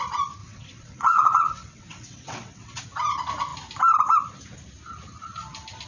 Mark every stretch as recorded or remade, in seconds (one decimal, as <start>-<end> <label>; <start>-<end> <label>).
0.0-0.4 recorded; 0.4-2.8 remade; 2.8-5.9 recorded